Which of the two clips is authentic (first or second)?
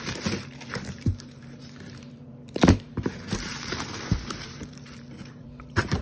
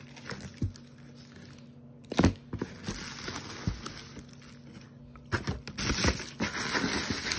second